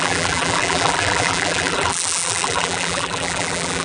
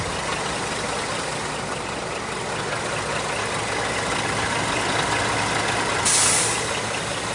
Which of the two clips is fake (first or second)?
first